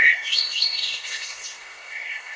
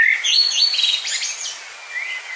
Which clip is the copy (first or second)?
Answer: first